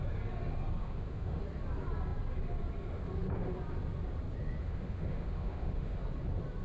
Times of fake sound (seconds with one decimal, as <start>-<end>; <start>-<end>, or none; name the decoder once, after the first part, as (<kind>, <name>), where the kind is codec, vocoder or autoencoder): 0.8-1.4 (autoencoder, DAC-VAE); 4.6-6.0